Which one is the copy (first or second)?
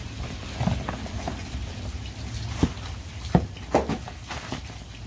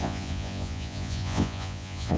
second